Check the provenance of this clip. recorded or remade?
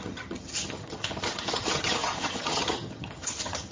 remade